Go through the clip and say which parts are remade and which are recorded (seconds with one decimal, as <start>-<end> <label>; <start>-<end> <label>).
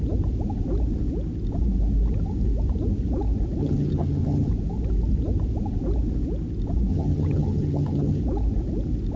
0.0-3.6 recorded; 3.6-4.5 remade; 4.5-6.9 recorded; 6.9-8.2 remade; 8.2-9.2 recorded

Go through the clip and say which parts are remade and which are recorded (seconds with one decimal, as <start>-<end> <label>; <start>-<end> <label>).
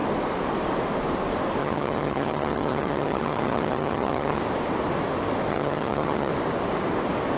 0.0-1.6 recorded; 1.6-4.4 remade; 4.4-5.5 recorded; 5.5-6.3 remade; 6.3-7.4 recorded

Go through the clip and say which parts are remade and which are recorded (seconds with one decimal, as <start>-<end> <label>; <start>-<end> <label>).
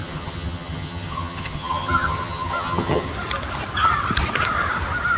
0.0-3.1 remade; 3.1-5.2 recorded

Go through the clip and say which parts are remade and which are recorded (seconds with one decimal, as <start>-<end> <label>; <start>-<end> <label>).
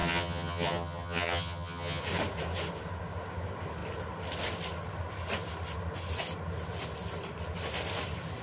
0.0-2.0 remade; 2.0-8.4 recorded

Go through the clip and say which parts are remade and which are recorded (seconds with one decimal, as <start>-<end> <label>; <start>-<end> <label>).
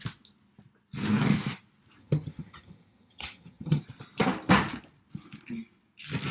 0.0-2.0 recorded; 2.0-3.8 remade; 3.8-6.3 recorded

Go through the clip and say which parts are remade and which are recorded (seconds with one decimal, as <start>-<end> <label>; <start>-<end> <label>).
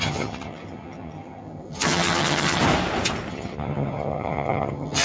0.0-2.6 remade; 2.6-3.3 recorded; 3.3-5.0 remade